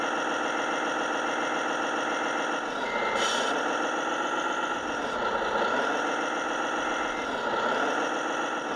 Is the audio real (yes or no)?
yes